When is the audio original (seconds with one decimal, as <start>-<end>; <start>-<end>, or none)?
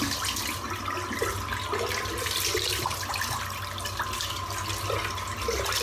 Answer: 0.0-5.8